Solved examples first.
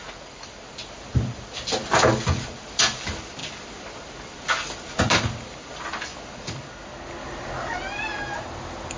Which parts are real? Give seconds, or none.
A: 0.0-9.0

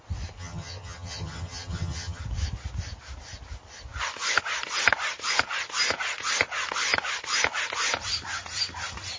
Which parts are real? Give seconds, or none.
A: 0.0-0.4; 2.2-9.2